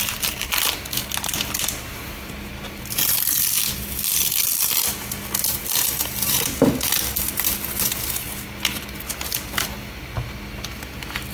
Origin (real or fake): real